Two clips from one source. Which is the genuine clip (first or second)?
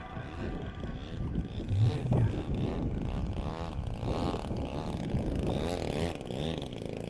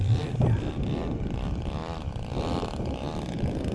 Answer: first